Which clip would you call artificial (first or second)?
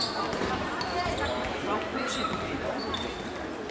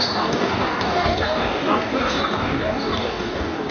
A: second